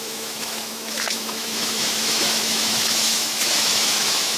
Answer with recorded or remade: remade